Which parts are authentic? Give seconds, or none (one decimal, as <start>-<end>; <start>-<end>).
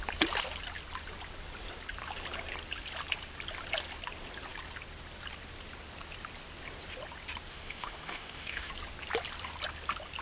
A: 0.0-7.5; 8.7-10.2